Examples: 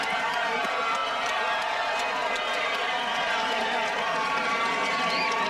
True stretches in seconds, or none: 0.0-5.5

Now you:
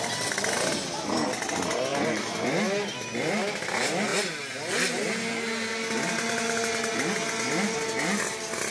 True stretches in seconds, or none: 0.0-8.7

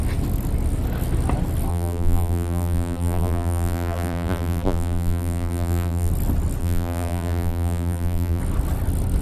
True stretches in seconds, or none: 0.0-1.7; 6.1-6.6; 8.4-9.2

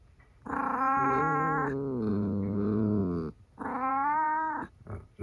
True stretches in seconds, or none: 1.2-2.1; 3.0-3.9

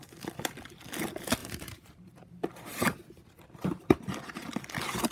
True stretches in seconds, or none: 0.0-1.4; 2.2-5.1

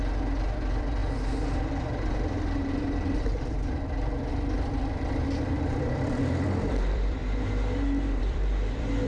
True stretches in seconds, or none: 7.2-8.2

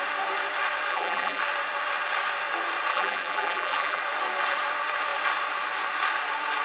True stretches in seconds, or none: 0.0-0.9; 1.4-2.9; 4.0-6.6

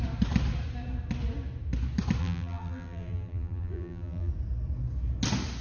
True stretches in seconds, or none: 0.0-2.2; 4.3-5.6